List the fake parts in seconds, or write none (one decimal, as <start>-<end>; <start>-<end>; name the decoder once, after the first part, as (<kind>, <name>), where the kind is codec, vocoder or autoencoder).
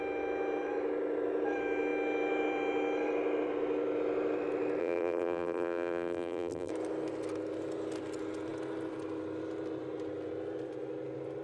4.8-6.7 (vocoder, BigVGAN v2)